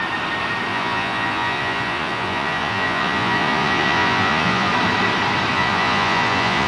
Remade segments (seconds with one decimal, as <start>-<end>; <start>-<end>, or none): 0.7-4.7; 5.5-6.7

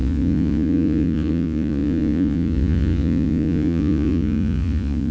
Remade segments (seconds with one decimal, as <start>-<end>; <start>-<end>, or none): 0.0-5.1

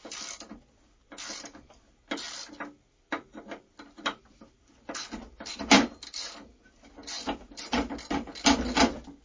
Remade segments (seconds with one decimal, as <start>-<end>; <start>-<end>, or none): none

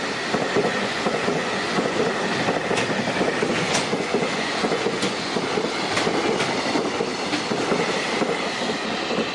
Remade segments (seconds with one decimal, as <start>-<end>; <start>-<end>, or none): 0.6-2.0; 3.5-5.4

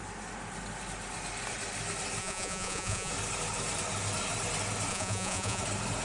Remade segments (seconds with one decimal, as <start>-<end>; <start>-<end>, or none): 2.2-3.1; 4.9-5.6

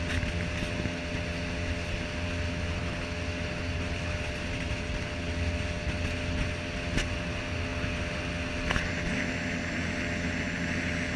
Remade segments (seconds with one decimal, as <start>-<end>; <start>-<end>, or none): none